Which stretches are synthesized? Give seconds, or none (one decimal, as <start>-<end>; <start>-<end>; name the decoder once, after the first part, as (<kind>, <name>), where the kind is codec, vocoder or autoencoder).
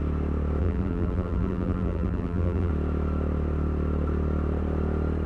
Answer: 0.6-2.7 (vocoder, BigVGAN v2)